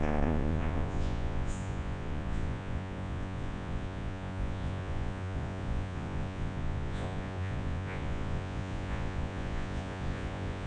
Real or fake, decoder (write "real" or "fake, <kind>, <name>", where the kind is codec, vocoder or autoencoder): fake, vocoder, Vocos